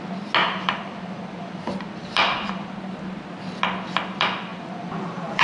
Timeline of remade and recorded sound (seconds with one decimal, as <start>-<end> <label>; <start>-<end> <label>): 0.0-0.4 recorded; 0.4-2.8 remade; 2.8-4.5 recorded; 4.5-5.4 remade